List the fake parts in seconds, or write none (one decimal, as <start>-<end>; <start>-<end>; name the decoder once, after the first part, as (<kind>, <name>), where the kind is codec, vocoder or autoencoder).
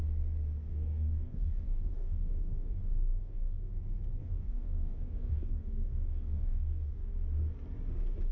0.7-3.7 (codec, DAC); 4.2-7.1